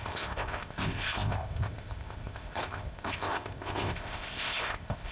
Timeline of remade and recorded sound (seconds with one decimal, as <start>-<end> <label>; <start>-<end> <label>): 0.0-5.1 remade